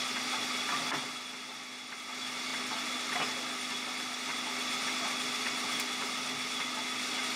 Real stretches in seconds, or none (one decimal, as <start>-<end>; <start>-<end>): 0.0-7.4